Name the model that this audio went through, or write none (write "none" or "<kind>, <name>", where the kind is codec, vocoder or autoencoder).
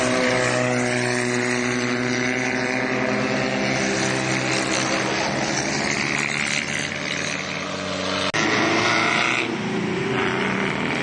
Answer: none